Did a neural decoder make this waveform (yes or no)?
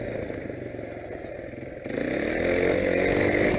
no